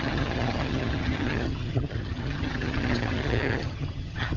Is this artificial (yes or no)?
yes